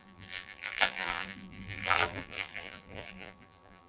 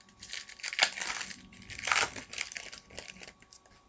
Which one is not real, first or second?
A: first